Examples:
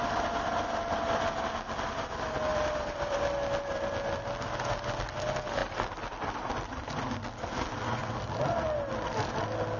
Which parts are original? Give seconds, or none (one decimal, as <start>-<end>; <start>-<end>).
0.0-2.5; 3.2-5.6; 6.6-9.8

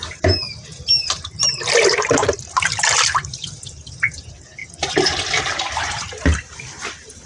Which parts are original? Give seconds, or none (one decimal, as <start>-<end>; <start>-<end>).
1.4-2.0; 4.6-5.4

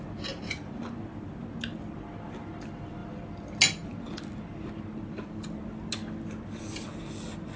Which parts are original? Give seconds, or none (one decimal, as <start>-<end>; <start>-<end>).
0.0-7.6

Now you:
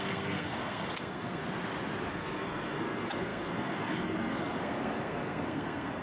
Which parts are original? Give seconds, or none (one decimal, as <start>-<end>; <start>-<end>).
1.4-2.1